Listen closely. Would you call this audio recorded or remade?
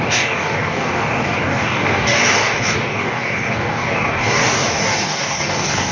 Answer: remade